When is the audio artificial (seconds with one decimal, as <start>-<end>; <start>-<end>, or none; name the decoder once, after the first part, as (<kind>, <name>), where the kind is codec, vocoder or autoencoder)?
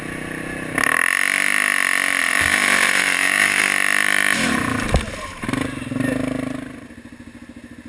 2.2-3.6 (vocoder, BigVGAN v2)